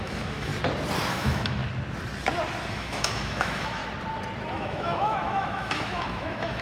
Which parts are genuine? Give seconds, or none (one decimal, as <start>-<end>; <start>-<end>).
0.5-1.1; 1.6-2.7; 3.8-4.5